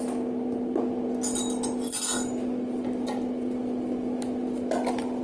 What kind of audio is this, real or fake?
real